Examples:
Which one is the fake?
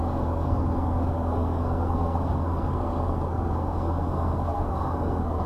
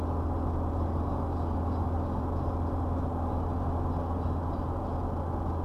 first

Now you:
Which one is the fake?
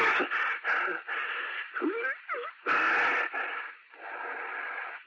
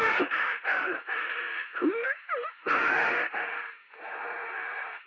second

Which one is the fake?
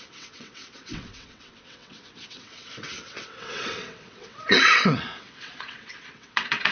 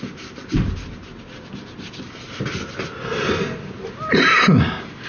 first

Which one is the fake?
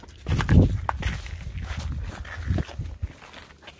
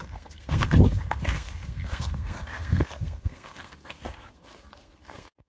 second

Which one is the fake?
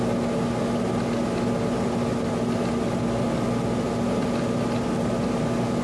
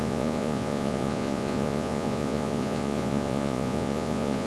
second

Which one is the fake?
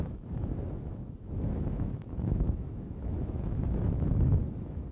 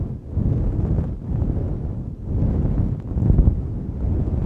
first